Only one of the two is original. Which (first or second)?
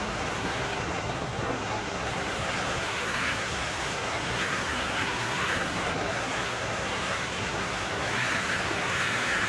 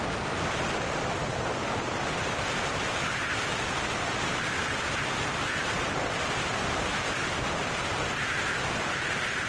second